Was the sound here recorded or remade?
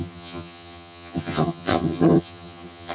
remade